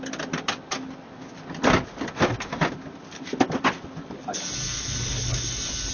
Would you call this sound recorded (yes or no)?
yes